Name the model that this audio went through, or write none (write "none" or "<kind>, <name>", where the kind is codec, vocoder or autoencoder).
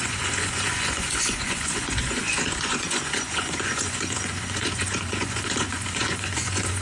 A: vocoder, Vocos